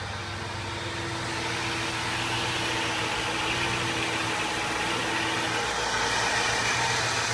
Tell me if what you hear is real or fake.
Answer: real